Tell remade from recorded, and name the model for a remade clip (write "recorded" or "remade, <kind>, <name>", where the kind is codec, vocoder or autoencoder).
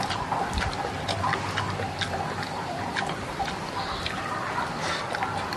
recorded